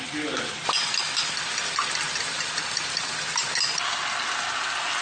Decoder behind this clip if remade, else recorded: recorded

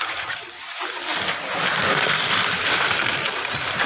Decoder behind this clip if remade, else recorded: remade, vocoder, BigVGAN v2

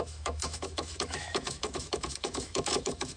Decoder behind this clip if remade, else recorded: remade, autoencoder, DAC-VAE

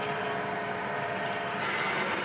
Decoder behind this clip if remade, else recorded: recorded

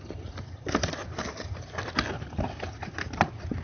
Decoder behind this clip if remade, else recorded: recorded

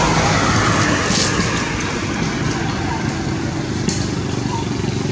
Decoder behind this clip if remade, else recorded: recorded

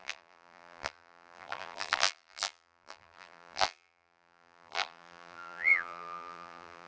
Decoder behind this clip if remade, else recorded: remade, vocoder, BigVGAN v2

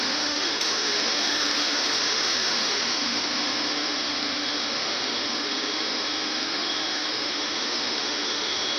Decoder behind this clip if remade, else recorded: remade, autoencoder, DAC-VAE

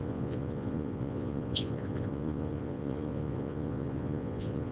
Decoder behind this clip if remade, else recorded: remade, vocoder, Vocos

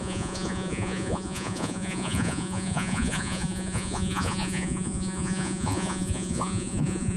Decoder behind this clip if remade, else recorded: remade, vocoder, Vocos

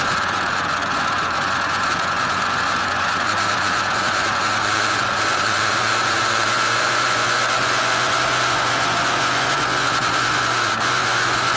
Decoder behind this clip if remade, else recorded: remade, vocoder, Vocos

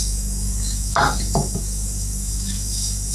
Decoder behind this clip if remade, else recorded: remade, codec, DAC